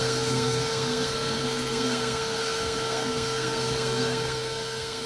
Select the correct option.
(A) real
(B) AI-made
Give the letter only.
B